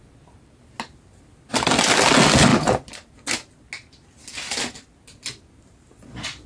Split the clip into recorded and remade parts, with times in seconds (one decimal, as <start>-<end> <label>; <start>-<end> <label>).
0.0-6.5 recorded